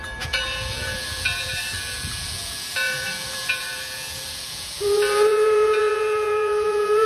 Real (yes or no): no